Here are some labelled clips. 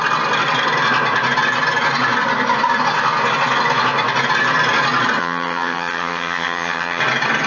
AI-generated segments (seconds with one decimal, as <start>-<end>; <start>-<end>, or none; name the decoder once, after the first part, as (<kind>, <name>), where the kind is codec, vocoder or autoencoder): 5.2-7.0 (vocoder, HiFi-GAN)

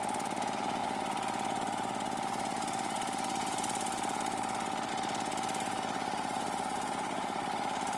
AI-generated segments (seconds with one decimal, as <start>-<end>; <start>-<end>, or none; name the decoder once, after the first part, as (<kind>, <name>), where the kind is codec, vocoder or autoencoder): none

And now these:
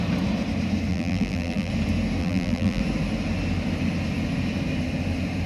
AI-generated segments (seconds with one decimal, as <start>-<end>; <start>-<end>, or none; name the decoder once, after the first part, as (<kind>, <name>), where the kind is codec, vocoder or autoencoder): 0.9-1.7 (vocoder, BigVGAN v2); 2.2-2.8

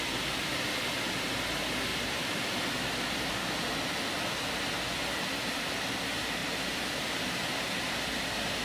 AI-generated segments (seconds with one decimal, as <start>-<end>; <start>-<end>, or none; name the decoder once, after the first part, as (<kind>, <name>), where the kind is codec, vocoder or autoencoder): 1.9-2.4 (vocoder, BigVGAN v2); 6.4-7.3

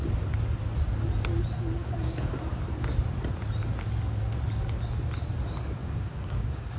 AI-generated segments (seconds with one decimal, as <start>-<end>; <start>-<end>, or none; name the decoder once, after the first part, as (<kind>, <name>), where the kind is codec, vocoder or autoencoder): 1.8-2.4 (codec, DAC); 5.8-6.8

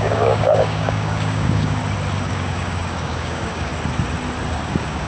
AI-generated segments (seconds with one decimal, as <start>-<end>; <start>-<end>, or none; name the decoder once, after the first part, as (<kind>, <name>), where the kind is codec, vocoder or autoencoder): 0.0-1.8 (codec, DAC); 2.3-3.7; 4.5-5.1